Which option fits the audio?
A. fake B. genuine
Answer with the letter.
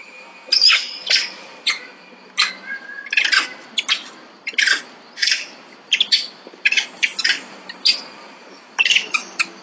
B